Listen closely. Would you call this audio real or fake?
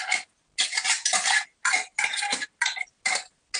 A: real